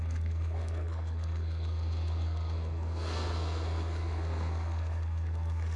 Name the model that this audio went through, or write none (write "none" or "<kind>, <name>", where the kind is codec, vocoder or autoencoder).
codec, SNAC